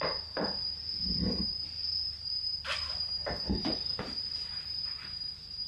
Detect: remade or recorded remade